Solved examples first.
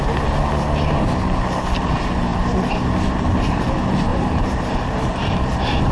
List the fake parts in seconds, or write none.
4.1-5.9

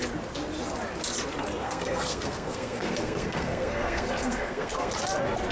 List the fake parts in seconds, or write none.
1.6-4.9

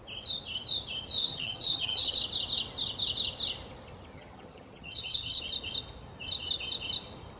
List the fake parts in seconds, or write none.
1.2-2.2; 4.1-5.4